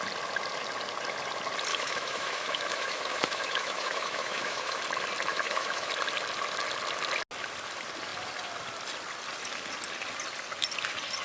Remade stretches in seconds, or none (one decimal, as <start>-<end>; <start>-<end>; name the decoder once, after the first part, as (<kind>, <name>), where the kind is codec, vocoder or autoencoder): 1.7-4.8 (autoencoder, DAC-VAE); 5.3-5.9